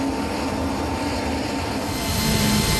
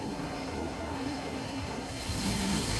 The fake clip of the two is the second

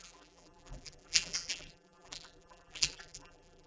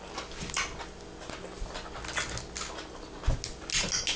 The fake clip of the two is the first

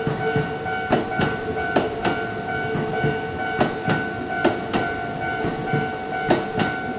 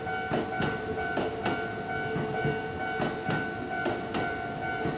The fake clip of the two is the first